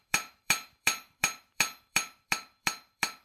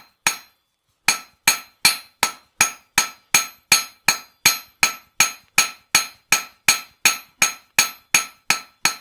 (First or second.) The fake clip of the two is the first